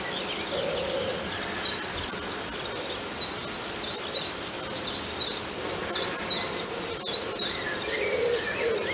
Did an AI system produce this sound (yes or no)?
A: no